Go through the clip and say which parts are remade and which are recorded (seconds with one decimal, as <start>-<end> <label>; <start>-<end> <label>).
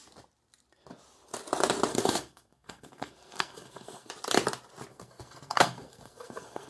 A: 0.0-1.9 recorded; 1.9-4.1 remade; 4.1-4.9 recorded; 4.9-6.7 remade